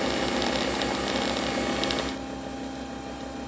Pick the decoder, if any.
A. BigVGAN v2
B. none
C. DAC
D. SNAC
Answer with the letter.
B